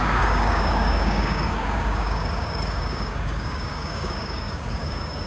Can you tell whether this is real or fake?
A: fake